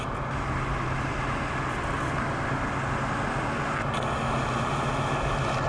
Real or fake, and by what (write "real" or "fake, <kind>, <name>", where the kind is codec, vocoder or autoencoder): real